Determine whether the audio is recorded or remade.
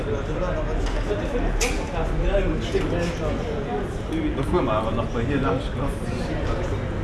recorded